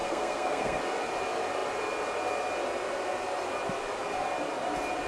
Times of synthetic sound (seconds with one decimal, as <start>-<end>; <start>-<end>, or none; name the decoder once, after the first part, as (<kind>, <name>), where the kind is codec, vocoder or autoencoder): 0.0-0.8 (codec, SNAC)